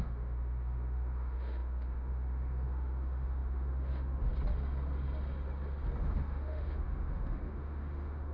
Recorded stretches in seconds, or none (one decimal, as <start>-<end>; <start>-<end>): 4.3-6.0